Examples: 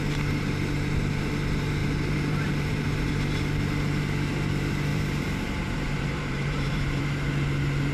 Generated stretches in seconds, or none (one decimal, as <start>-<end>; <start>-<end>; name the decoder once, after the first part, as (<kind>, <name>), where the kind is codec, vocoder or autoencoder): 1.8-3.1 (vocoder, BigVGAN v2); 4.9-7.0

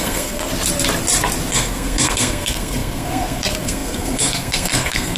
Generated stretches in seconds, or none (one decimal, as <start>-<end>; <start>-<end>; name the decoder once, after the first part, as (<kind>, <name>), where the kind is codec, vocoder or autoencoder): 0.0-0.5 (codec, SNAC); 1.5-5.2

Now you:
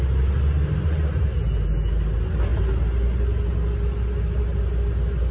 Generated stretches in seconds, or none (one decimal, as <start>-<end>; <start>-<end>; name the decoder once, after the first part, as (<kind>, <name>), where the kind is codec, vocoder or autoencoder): none